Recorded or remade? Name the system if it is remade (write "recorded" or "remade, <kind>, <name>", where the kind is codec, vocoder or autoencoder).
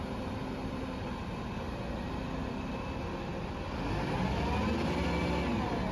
recorded